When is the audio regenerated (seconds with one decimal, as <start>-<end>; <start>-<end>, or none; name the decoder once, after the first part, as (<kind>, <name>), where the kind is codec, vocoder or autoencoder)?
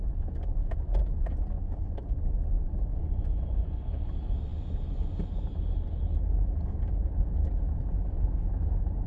2.9-3.8 (vocoder, Vocos)